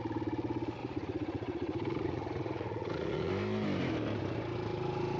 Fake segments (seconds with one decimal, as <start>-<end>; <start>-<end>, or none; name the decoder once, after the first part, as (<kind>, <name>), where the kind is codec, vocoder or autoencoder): 0.8-3.3 (vocoder, Vocos)